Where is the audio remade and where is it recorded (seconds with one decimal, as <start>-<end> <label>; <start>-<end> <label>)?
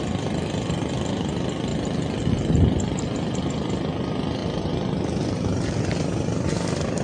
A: 0.0-1.7 recorded; 1.7-3.4 remade; 3.4-4.4 recorded; 4.4-5.2 remade; 5.2-7.0 recorded